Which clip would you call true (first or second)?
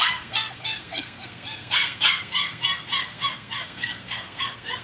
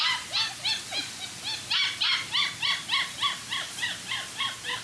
second